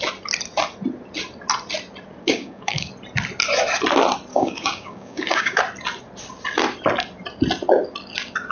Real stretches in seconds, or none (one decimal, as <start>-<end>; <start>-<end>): 0.0-2.2; 2.9-4.3; 5.6-8.5